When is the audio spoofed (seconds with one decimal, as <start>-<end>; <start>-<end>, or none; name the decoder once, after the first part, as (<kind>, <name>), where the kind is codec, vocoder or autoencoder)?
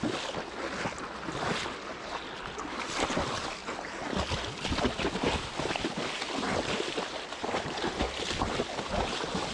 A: none